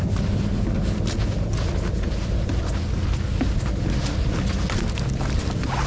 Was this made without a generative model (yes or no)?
yes